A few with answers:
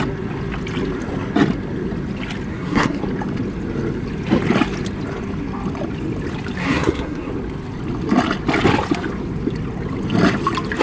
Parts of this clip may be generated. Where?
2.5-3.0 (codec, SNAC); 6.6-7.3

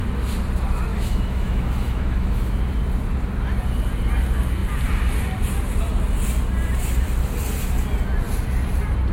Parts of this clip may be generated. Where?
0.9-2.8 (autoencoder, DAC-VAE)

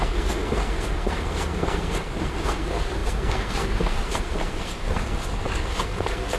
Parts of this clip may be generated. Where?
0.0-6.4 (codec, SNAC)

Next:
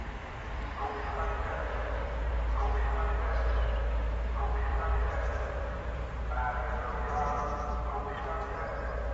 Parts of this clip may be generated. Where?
0.0-2.3 (vocoder, BigVGAN v2); 4.7-7.1

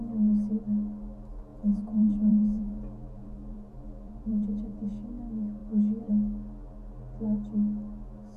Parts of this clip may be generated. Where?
1.5-4.9 (vocoder, Vocos)

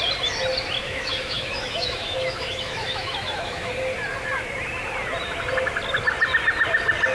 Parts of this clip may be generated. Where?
0.8-3.7 (autoencoder, DAC-VAE)